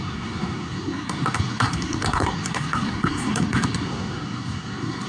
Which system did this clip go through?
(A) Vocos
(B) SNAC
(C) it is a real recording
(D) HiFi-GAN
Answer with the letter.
B